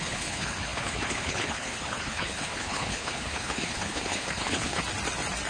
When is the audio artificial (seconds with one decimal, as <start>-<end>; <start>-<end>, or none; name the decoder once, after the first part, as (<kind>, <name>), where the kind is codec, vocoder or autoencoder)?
0.0-4.8 (codec, HILCodec)